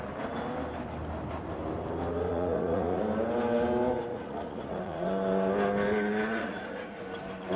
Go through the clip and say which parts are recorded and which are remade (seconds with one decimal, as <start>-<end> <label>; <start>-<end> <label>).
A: 0.0-2.3 recorded; 2.3-3.0 remade; 3.0-4.1 recorded; 4.1-5.1 remade; 5.1-6.4 recorded; 6.4-7.0 remade; 7.0-7.6 recorded